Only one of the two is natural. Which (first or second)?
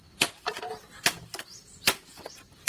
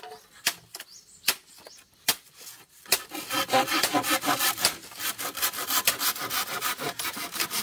second